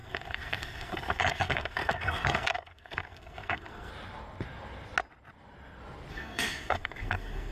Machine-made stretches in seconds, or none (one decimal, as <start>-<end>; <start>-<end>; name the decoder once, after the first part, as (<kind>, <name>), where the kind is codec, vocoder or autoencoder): 0.0-3.9 (codec, SNAC); 6.1-7.5